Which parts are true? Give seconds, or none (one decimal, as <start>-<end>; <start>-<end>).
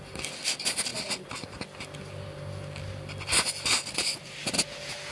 0.0-5.1